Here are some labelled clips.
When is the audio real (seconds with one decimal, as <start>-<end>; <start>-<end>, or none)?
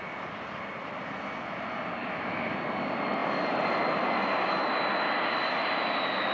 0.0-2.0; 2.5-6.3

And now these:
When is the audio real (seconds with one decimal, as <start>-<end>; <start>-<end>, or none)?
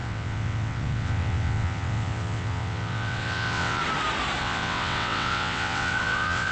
3.8-4.4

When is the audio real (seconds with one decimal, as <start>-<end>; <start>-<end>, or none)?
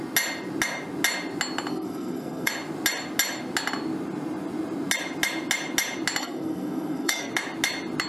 0.0-1.7; 2.5-6.2; 7.3-8.1